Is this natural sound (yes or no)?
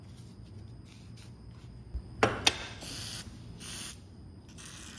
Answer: yes